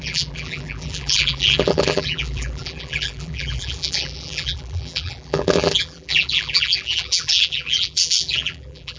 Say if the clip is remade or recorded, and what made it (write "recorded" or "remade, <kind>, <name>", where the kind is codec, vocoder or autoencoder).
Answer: remade, vocoder, BigVGAN v2